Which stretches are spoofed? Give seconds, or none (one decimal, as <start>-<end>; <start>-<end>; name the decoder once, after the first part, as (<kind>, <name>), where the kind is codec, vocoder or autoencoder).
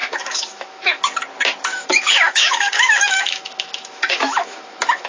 0.0-1.0 (autoencoder, DAC-VAE); 1.7-5.1